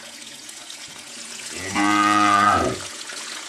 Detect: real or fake fake